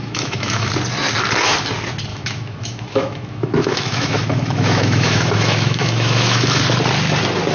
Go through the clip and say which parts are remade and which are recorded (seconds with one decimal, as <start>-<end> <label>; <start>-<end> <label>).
0.0-0.7 remade; 0.7-2.1 recorded; 2.1-6.6 remade; 6.6-7.5 recorded